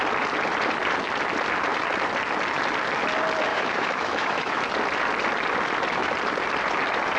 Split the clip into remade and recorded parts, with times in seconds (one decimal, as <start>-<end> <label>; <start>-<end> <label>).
0.0-3.5 recorded; 3.5-4.6 remade; 4.6-7.2 recorded